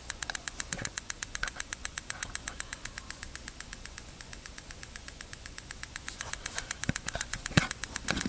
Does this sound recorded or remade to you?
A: remade